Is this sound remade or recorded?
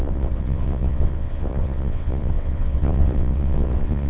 remade